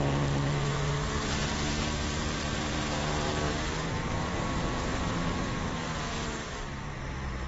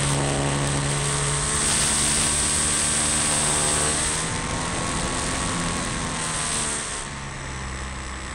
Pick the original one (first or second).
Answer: second